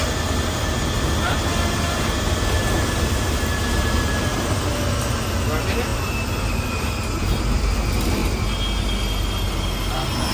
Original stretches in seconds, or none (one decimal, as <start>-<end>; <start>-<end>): 0.0-10.3